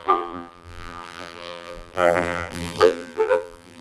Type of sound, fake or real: fake